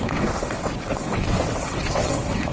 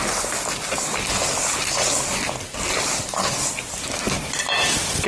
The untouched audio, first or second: second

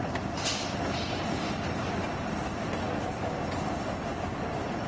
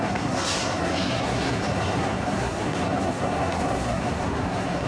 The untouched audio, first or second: first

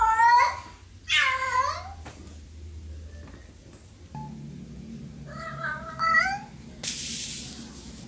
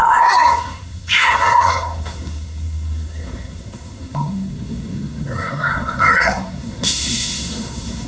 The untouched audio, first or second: first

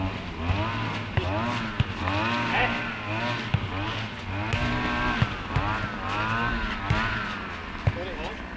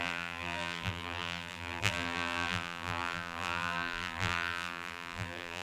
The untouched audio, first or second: first